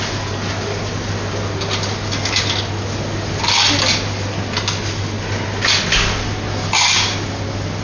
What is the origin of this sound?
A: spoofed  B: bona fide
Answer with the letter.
B